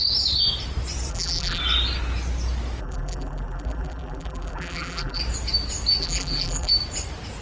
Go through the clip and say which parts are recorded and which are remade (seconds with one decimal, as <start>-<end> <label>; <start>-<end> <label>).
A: 0.0-1.1 recorded; 1.1-1.6 remade; 1.6-2.8 recorded; 2.8-5.2 remade; 5.2-6.0 recorded; 6.0-6.7 remade; 6.7-7.4 recorded